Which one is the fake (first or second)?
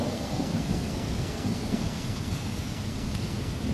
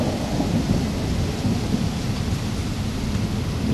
first